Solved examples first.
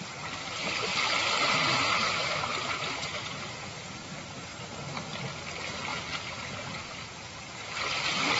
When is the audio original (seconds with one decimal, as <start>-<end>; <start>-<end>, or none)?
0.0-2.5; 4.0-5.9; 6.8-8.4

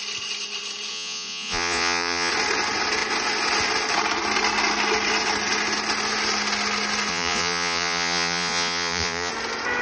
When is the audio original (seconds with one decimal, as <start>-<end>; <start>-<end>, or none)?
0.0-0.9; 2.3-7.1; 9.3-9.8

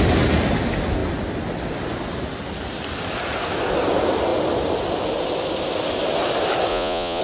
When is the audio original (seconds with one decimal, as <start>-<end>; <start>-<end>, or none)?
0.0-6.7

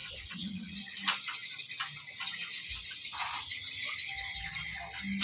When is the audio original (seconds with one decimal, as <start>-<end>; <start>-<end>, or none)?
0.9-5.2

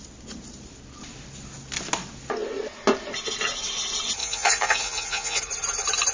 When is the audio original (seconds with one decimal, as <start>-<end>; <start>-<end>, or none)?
0.0-4.2; 5.4-6.1

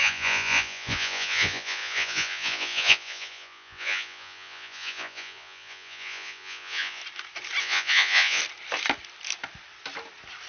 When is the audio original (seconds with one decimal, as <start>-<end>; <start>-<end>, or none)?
7.0-7.6; 8.4-10.5

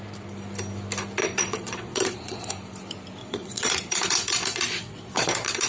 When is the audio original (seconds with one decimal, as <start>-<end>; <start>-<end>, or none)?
0.0-1.2; 2.5-3.2